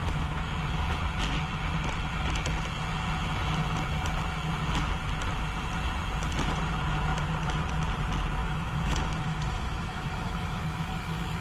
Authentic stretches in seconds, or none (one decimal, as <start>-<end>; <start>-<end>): 0.5-8.4; 10.9-11.4